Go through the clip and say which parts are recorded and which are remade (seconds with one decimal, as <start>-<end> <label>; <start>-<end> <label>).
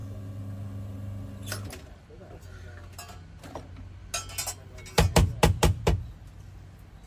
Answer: 0.0-7.1 recorded